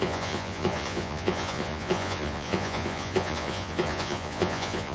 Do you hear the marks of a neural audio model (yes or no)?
yes